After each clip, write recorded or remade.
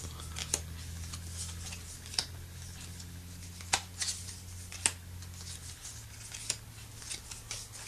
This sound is recorded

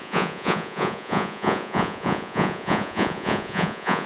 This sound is remade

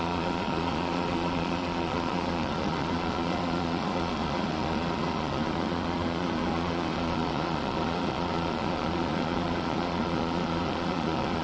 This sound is remade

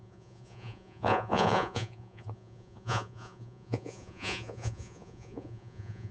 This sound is remade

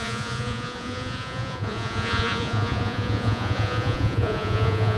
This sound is remade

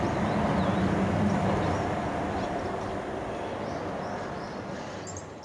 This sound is recorded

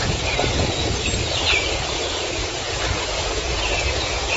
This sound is remade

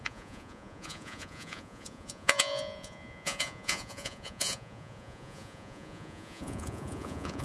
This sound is remade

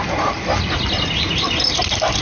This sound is recorded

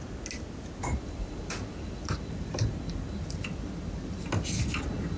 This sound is recorded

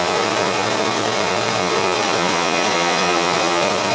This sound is remade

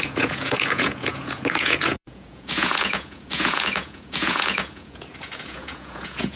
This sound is remade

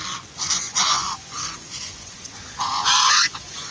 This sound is remade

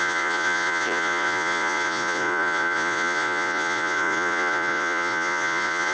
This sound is remade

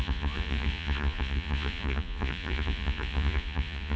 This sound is remade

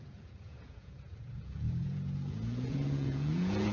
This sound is remade